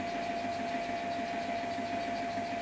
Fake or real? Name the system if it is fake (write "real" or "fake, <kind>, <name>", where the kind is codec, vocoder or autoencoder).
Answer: real